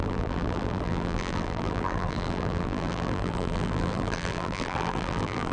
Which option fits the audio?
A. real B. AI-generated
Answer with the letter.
B